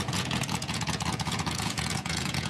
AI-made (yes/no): yes